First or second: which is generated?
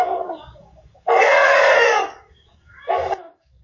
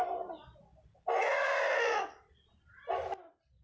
first